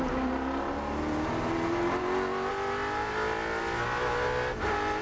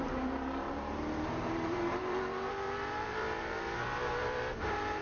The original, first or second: first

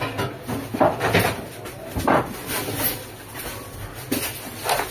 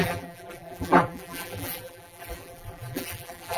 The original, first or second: first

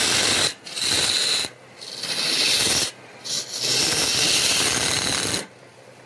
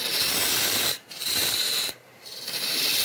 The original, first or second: first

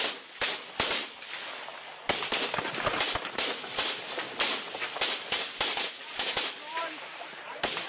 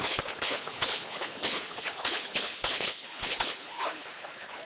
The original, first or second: first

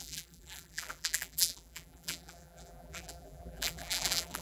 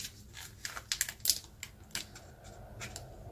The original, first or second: second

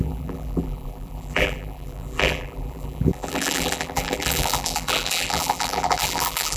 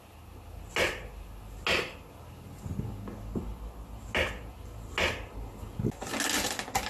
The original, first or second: second